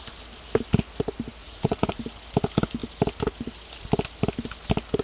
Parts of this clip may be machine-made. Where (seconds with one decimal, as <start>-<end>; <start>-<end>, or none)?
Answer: 1.4-2.0